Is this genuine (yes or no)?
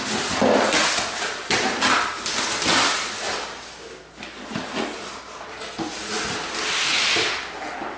yes